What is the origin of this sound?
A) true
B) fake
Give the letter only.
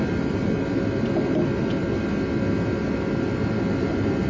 A